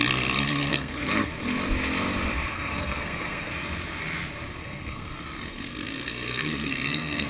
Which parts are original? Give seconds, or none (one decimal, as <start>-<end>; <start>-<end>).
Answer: 0.0-0.7; 1.3-2.5; 3.5-4.6; 5.1-5.5